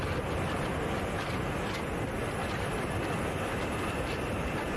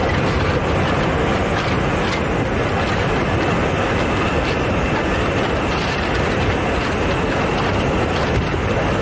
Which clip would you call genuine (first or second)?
second